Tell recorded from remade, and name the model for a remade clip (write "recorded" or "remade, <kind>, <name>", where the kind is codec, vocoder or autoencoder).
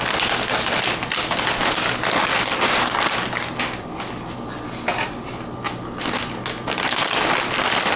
recorded